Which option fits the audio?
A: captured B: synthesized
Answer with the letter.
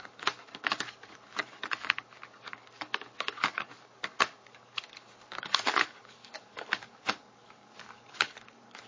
B